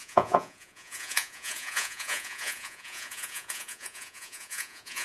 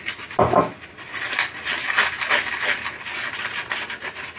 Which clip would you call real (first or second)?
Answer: second